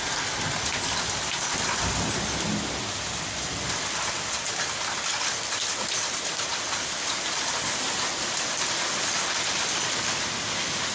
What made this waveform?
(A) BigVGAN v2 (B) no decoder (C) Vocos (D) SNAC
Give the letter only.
B